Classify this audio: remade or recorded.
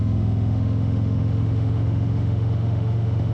remade